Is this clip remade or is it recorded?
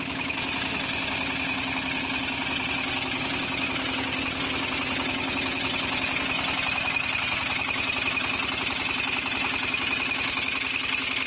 recorded